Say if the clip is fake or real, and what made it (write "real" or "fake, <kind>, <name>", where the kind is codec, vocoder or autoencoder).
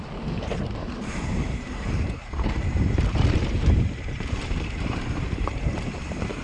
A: fake, vocoder, BigVGAN v2